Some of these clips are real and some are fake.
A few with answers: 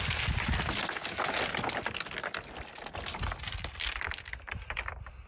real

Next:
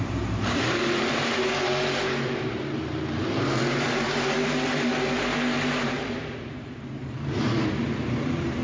fake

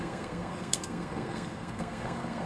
fake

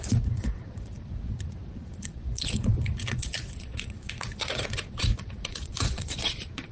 fake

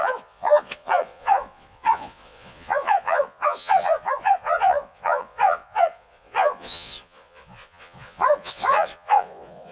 fake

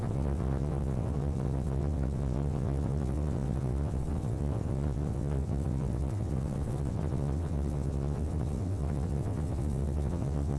fake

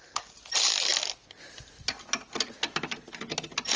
real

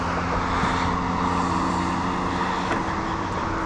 real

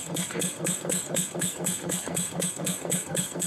fake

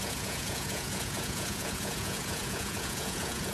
fake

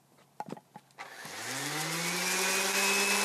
real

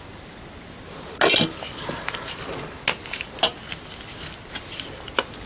real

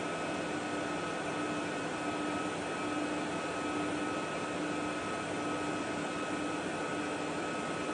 real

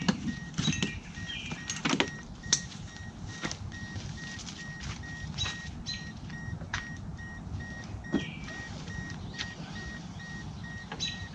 real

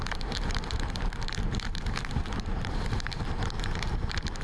fake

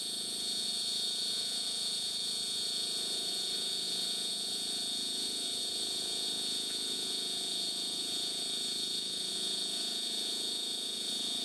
fake